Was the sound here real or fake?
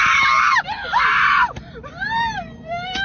fake